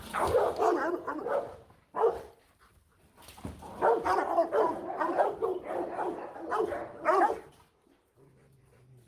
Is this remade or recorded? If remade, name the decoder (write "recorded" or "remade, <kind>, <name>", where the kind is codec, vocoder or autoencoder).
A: recorded